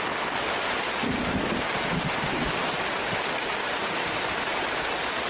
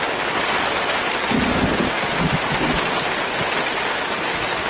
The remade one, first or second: first